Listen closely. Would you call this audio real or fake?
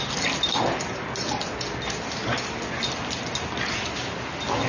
real